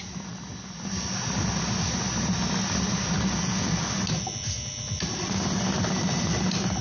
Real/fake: real